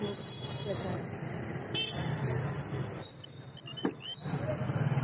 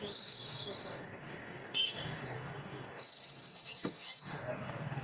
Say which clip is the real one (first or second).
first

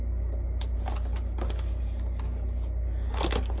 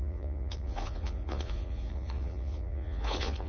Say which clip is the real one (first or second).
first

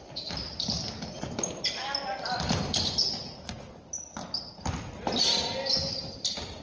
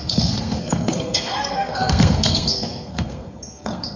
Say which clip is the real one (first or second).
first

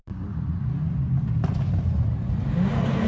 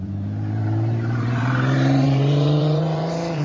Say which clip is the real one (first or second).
first